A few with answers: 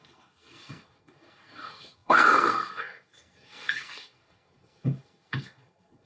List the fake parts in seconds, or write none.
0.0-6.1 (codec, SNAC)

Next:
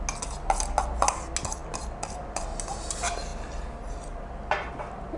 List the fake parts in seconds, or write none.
none

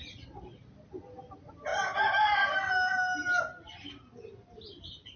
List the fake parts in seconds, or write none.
none

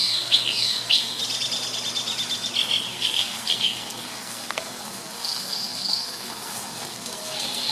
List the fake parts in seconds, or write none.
0.0-1.2 (codec, SNAC); 2.9-7.7

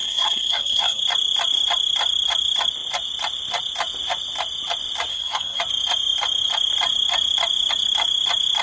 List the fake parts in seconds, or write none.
0.0-1.0 (codec, SNAC); 5.1-5.6

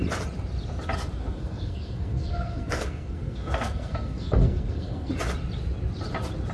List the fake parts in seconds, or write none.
1.2-5.1 (codec, SNAC)